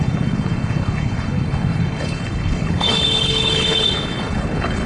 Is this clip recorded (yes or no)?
no